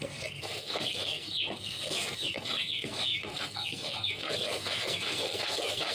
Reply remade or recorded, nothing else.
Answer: remade